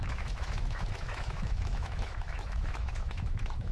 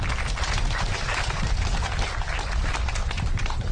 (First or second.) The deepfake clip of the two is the first